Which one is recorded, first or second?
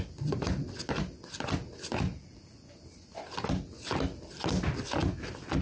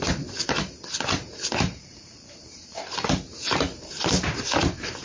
first